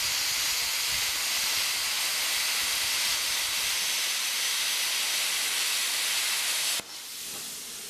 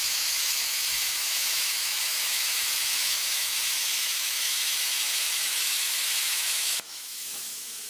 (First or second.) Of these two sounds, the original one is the first